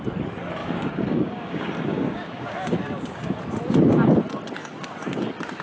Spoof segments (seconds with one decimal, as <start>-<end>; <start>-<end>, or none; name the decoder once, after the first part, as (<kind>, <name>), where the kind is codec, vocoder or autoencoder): 0.6-3.4 (codec, DAC)